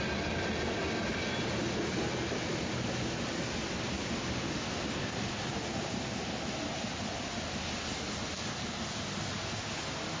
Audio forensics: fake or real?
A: real